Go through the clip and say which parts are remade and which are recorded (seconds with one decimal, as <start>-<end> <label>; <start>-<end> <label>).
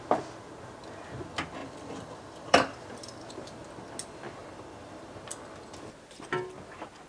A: 0.0-1.6 recorded; 1.6-3.3 remade; 3.3-4.4 recorded; 4.4-5.2 remade; 5.2-7.1 recorded